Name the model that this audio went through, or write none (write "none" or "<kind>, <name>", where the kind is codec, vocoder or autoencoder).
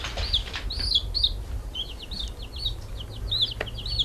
none